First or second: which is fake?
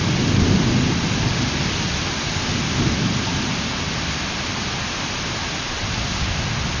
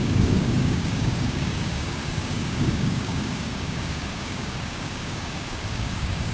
second